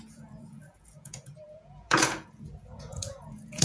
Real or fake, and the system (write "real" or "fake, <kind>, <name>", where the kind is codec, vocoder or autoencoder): fake, vocoder, Vocos